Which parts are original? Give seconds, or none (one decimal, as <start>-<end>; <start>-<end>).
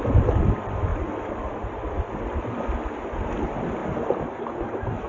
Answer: 3.8-5.1